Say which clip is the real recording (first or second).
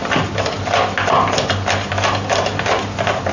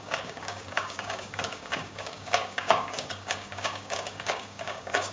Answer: first